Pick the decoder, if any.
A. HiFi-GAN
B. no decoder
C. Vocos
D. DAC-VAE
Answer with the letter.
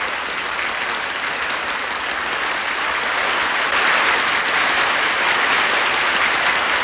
B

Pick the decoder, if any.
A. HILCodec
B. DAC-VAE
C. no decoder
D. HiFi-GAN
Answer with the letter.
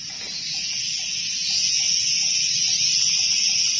C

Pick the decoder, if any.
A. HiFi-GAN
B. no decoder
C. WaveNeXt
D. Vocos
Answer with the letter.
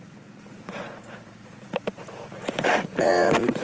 D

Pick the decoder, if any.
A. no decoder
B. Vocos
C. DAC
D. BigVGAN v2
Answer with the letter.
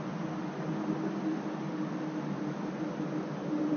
A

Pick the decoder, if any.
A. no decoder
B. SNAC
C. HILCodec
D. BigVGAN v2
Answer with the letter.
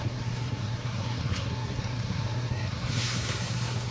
B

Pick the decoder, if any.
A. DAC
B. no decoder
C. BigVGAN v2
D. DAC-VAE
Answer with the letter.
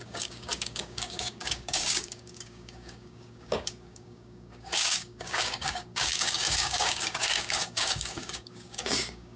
A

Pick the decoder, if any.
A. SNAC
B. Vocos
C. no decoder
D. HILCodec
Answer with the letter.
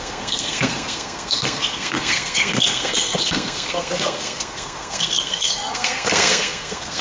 A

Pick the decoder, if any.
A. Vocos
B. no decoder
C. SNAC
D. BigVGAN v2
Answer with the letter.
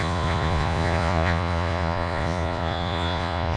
A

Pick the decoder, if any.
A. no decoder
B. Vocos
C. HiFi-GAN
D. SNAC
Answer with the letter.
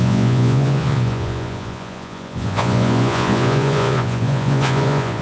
B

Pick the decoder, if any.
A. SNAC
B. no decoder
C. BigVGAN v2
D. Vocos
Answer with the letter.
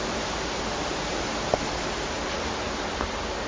B